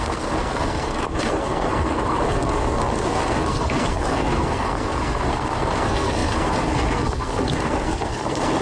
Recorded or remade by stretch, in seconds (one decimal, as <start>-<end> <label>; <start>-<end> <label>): 0.0-8.6 remade